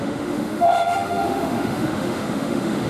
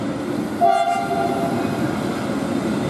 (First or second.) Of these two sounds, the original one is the second